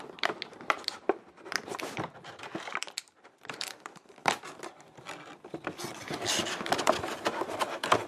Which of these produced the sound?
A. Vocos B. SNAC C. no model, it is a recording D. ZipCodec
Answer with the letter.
C